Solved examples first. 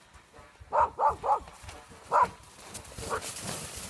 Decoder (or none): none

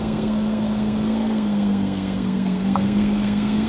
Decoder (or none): codec, SNAC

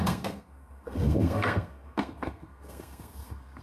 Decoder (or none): codec, SNAC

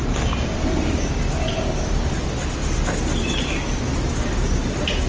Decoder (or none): none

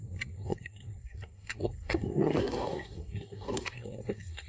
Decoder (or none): codec, SNAC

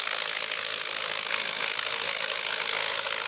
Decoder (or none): codec, SNAC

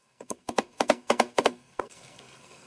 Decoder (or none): codec, SNAC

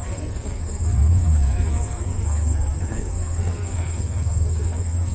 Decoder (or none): codec, SNAC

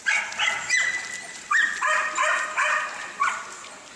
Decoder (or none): none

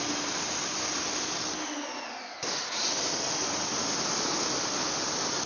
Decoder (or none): none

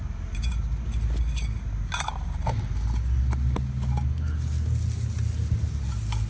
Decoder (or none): none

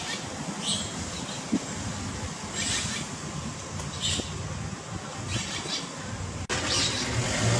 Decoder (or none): none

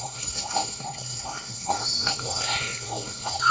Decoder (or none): codec, SNAC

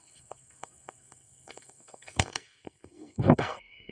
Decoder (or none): codec, SNAC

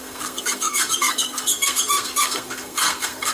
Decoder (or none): codec, SNAC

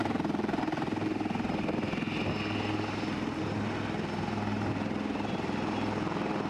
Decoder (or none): none